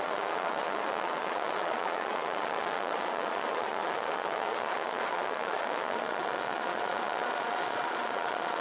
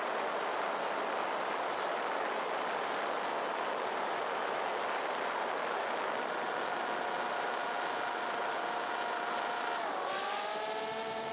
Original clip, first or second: second